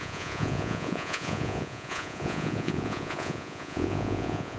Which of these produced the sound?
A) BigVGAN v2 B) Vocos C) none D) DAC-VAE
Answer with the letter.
B